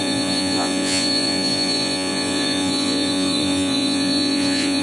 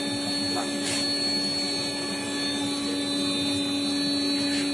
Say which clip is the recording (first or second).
second